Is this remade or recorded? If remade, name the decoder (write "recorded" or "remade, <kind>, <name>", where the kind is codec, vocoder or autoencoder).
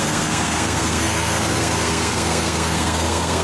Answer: remade, codec, SNAC